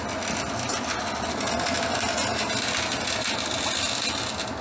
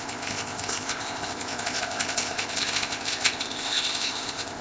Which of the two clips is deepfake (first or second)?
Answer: second